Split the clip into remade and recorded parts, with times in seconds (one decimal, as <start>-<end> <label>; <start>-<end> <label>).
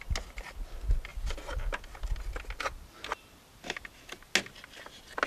0.0-5.3 recorded